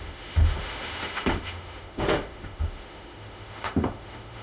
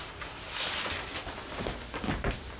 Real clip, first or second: second